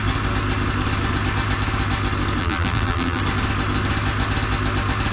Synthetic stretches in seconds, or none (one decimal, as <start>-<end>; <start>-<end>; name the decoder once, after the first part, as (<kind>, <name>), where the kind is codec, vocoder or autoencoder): 2.4-3.2 (vocoder, BigVGAN v2)